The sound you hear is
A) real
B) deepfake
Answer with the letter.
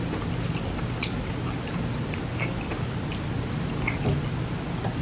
A